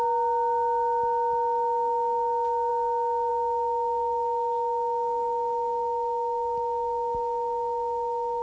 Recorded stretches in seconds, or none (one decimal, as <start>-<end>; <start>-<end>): 0.0-8.4